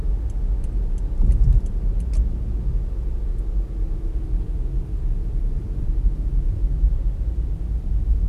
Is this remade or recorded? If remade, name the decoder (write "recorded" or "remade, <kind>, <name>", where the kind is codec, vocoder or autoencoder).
recorded